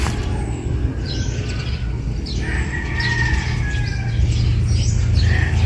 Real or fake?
real